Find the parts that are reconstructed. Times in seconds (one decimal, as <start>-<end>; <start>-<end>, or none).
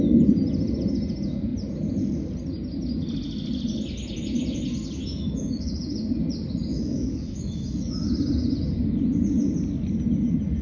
5.0-5.7; 6.7-7.9